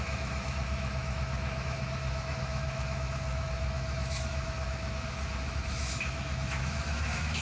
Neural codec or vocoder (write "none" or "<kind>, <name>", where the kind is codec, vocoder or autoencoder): autoencoder, DAC-VAE